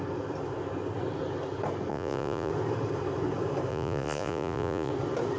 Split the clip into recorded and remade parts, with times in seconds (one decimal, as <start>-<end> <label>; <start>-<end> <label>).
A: 0.0-1.9 recorded; 1.9-2.5 remade; 2.5-3.7 recorded; 3.7-4.9 remade; 4.9-5.4 recorded